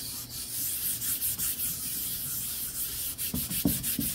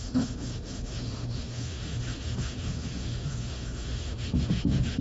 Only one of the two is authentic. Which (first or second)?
first